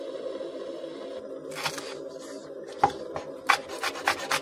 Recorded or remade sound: recorded